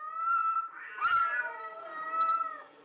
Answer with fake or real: real